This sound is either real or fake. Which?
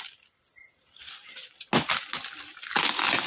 real